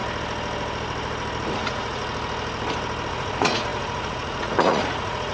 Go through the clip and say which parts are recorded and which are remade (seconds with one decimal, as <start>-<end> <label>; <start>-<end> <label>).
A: 0.0-1.5 recorded; 1.5-2.0 remade; 2.0-3.1 recorded; 3.1-5.3 remade